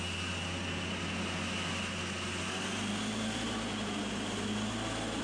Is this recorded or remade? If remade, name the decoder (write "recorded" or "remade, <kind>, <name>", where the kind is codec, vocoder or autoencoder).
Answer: recorded